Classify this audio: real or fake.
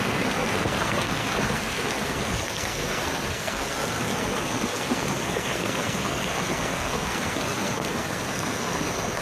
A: fake